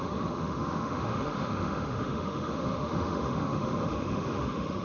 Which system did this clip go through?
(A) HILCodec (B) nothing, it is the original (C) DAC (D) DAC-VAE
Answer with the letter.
D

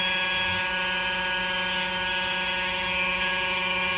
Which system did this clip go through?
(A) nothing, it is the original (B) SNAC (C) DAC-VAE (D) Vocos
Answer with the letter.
C